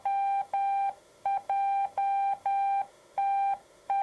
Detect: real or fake fake